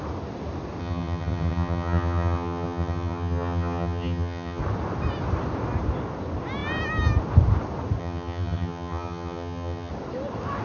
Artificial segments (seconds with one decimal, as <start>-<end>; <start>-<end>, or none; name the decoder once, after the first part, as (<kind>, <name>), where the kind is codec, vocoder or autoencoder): 0.8-4.6 (vocoder, HiFi-GAN); 8.0-9.9